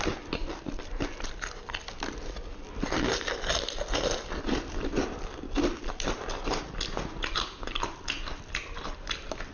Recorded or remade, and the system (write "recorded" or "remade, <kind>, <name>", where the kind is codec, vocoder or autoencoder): recorded